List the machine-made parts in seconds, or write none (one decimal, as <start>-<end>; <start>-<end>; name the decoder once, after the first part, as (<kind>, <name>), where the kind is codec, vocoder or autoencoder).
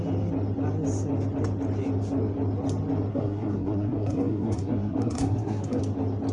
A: 3.1-5.8 (codec, SNAC)